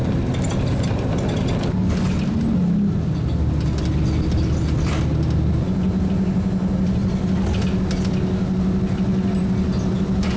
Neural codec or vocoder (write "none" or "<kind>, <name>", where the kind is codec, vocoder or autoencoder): none